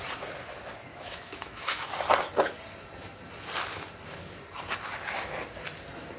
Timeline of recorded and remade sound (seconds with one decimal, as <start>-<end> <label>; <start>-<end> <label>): 0.0-0.9 recorded; 0.9-1.9 remade; 1.9-6.2 recorded